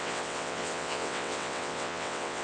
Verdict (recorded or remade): remade